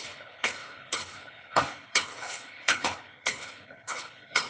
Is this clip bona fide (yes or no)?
no